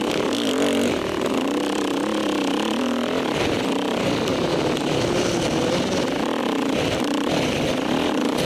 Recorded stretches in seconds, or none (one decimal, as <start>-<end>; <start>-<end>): 0.0-8.5